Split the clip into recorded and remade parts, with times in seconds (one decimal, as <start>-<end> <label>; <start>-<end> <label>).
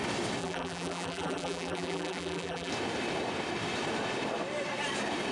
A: 0.0-0.4 recorded; 0.4-2.7 remade; 2.7-5.3 recorded